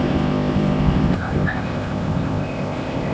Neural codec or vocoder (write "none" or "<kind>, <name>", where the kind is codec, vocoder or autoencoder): codec, ZipCodec